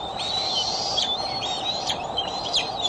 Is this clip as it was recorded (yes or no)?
no